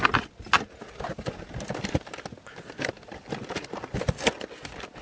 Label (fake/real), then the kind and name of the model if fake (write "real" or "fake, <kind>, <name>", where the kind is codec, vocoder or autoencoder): real